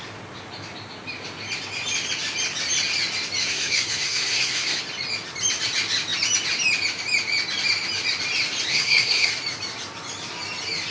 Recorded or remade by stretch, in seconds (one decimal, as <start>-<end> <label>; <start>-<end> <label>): 0.0-3.4 recorded; 3.4-4.8 remade; 4.8-8.7 recorded; 8.7-9.3 remade; 9.3-10.9 recorded